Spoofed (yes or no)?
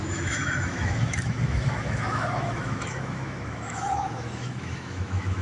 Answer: yes